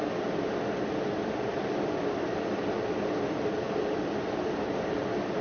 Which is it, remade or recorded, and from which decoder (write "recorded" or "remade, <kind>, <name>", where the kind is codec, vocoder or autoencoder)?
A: recorded